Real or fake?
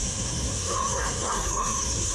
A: fake